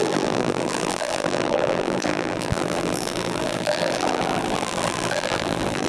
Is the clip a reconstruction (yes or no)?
yes